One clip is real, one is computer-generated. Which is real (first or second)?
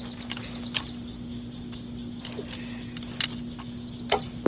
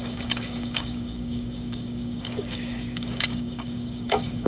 first